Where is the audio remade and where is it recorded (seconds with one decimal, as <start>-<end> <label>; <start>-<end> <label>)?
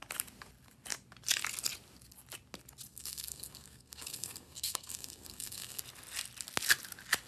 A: 0.0-2.9 recorded; 2.9-5.8 remade; 5.8-7.3 recorded